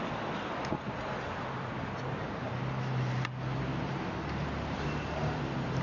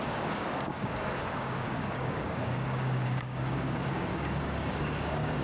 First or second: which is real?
first